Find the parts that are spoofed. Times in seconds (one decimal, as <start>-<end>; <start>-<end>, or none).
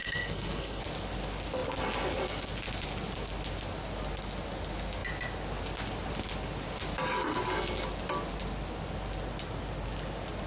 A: 0.0-0.8